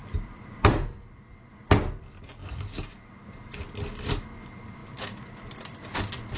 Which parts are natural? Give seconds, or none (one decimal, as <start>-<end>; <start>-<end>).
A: 1.0-6.4